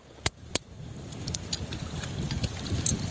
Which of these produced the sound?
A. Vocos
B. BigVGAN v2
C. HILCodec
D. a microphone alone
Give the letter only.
B